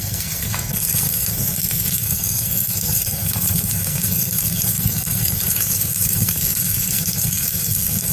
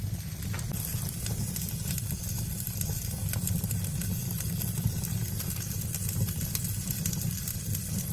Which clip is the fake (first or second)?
first